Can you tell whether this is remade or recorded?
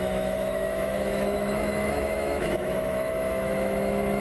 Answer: remade